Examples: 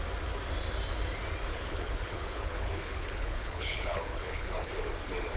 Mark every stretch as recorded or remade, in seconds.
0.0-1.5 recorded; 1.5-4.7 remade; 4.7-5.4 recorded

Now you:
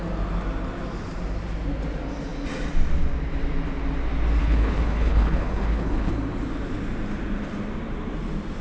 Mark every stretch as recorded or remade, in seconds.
0.0-4.4 recorded; 4.4-6.1 remade; 6.1-8.6 recorded